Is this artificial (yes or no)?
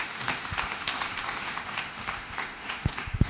yes